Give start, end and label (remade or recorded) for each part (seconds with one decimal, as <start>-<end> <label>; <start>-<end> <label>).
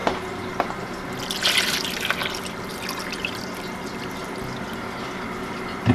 0.0-0.5 remade; 0.5-2.2 recorded; 2.2-5.9 remade